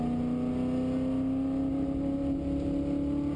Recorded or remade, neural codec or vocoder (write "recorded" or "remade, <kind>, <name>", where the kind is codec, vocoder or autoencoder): recorded